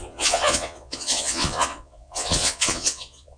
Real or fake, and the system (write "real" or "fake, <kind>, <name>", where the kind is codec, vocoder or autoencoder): fake, vocoder, Vocos